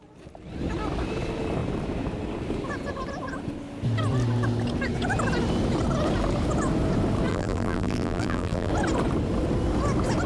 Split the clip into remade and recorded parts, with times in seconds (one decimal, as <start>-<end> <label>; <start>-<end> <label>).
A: 0.0-7.3 recorded; 7.3-8.7 remade; 8.7-10.3 recorded